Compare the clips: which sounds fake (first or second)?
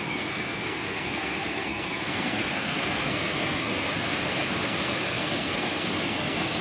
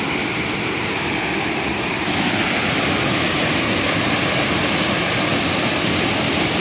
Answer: first